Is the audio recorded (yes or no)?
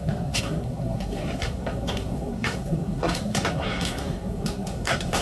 no